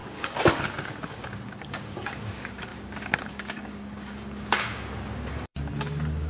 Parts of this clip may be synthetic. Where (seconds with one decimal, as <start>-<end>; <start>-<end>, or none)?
0.0-6.3